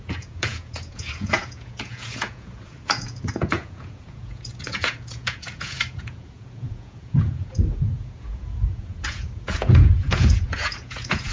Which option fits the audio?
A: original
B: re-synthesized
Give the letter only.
B